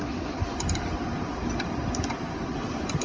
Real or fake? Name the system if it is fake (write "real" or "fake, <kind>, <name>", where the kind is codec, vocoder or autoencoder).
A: real